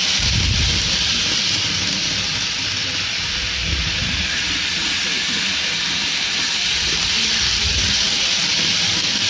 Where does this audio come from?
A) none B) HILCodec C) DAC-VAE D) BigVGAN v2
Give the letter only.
A